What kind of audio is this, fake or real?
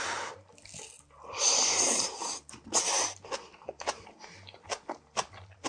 real